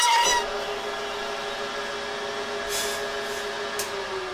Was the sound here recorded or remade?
recorded